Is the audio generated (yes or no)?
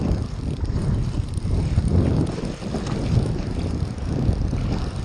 no